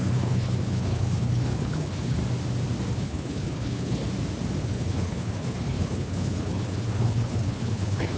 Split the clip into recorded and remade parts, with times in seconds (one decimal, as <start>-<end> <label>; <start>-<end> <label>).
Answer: 0.0-2.2 remade; 2.2-2.9 recorded; 2.9-4.0 remade; 4.0-4.6 recorded; 4.6-8.2 remade